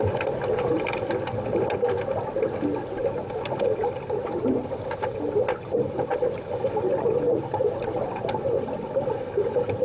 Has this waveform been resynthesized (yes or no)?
no